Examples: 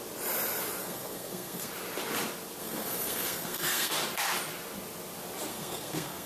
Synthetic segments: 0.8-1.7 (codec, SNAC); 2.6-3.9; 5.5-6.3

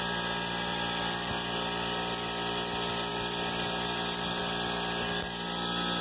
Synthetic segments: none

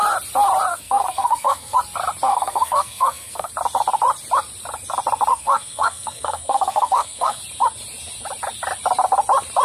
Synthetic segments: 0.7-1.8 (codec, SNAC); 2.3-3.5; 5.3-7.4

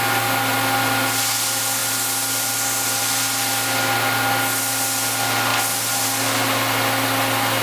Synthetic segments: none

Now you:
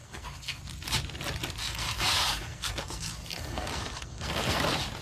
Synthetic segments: 0.0-0.6 (codec, SNAC); 1.6-4.6

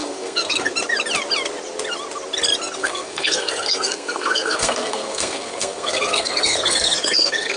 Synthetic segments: 0.0-0.7 (codec, SNAC); 2.8-7.6

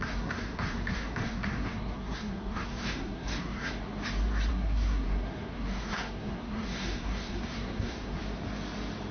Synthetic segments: 0.0-3.8 (codec, SNAC); 4.5-8.2